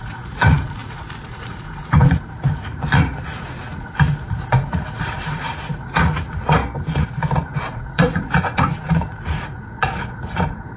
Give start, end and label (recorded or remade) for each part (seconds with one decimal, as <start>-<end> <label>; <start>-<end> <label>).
0.0-6.6 remade; 6.6-7.7 recorded; 7.7-10.8 remade